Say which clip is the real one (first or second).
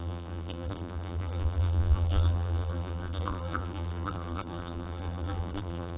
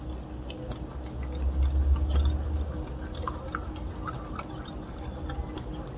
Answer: second